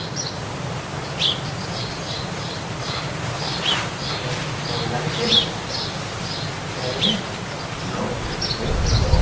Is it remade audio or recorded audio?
recorded